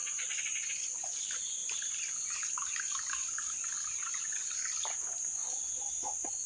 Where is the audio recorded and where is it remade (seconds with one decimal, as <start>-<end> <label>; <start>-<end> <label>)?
0.0-6.5 recorded